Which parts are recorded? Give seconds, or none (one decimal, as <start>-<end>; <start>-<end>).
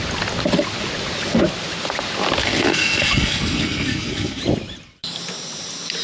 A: 0.0-2.4; 4.4-6.0